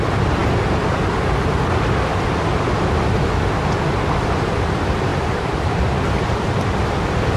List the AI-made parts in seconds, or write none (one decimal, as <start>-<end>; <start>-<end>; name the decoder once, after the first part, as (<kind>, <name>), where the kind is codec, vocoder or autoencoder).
2.1-2.9 (vocoder, BigVGAN v2); 5.1-5.9